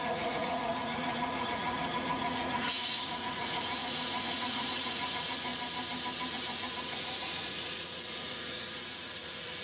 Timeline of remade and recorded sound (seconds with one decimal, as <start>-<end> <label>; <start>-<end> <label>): 0.0-5.5 remade; 5.5-6.3 recorded; 6.3-9.6 remade